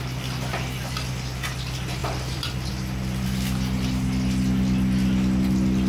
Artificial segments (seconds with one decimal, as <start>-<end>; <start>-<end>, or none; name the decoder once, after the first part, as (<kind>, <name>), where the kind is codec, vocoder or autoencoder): 2.0-2.7 (vocoder, BigVGAN v2)